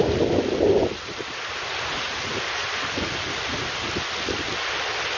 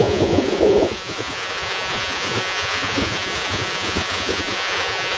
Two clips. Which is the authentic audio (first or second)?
first